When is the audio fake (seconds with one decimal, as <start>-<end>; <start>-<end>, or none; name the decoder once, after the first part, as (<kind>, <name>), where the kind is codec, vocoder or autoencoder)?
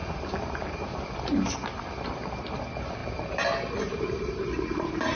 0.0-2.3 (vocoder, BigVGAN v2); 3.0-4.8